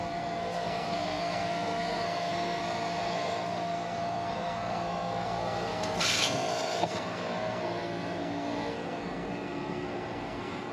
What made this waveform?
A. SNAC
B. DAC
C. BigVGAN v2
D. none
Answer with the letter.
A